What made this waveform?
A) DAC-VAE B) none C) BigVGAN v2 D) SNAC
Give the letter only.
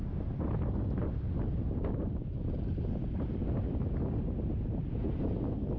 B